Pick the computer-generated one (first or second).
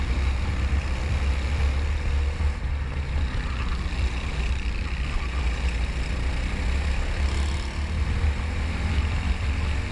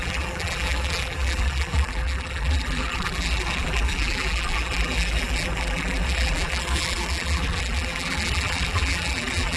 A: second